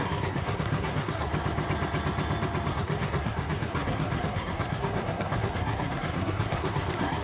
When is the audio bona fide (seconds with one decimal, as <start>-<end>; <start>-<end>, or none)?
1.3-2.7